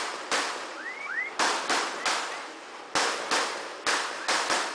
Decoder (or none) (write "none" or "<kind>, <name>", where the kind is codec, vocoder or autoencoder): none